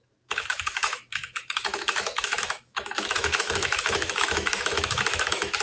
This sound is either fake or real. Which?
fake